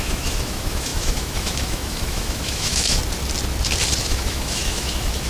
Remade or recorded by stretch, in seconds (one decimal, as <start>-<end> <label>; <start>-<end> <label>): 0.0-3.0 remade; 3.0-4.0 recorded; 4.0-5.3 remade